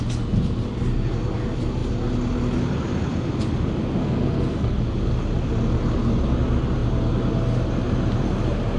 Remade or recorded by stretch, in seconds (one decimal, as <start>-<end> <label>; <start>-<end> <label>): 0.0-4.0 recorded; 4.0-4.8 remade; 4.8-8.8 recorded